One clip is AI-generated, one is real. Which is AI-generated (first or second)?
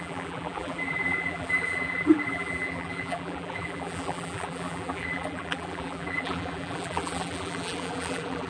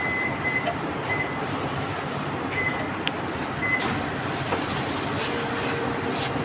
first